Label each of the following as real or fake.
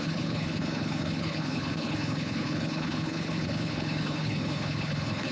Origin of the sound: fake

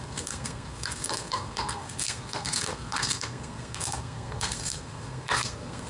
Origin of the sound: fake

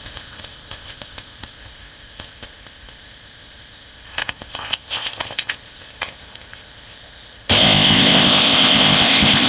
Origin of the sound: fake